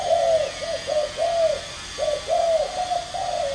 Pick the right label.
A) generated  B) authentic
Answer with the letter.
B